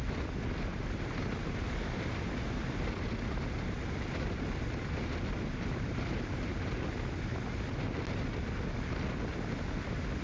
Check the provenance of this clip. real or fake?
real